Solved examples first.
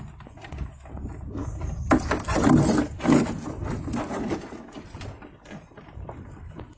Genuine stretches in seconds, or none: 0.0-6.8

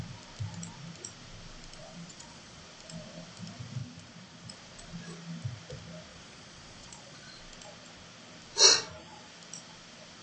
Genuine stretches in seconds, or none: 0.0-1.8; 2.6-6.1; 7.4-10.2

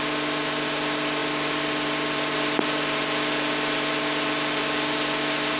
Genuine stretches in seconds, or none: 0.0-5.6

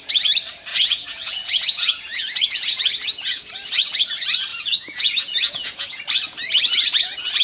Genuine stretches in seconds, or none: 0.0-0.7; 3.5-4.5; 6.0-7.4

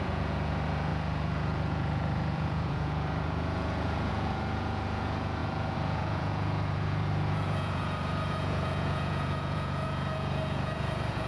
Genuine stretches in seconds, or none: none

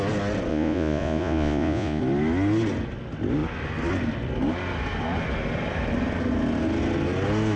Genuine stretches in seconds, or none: 0.0-0.5; 2.0-7.6